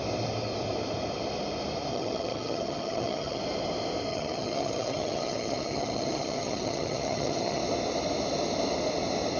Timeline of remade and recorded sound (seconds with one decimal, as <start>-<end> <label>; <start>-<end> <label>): 0.0-1.9 recorded; 1.9-3.4 remade; 3.4-4.1 recorded; 4.1-7.6 remade; 7.6-9.4 recorded